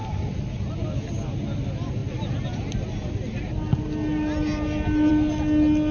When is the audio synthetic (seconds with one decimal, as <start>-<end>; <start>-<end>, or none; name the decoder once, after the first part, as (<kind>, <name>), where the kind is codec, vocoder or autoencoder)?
none